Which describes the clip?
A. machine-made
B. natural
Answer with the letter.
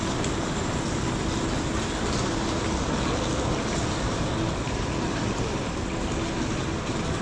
B